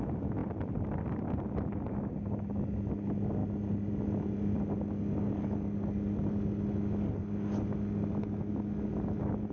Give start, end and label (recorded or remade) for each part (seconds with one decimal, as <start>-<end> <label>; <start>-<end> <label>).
0.0-0.4 recorded; 0.4-1.4 remade; 1.4-9.5 recorded